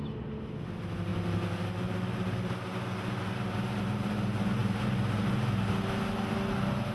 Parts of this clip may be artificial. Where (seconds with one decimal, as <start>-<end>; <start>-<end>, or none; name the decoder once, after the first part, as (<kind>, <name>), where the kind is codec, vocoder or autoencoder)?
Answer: none

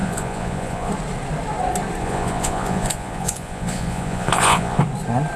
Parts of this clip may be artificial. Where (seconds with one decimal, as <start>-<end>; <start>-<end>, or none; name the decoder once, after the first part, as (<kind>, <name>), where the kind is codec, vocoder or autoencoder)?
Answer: 0.0-0.9 (vocoder, Vocos); 2.0-4.8

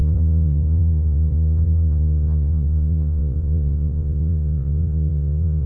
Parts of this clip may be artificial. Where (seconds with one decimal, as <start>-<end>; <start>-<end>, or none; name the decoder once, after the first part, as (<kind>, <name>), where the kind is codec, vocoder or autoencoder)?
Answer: 0.0-5.7 (vocoder, Vocos)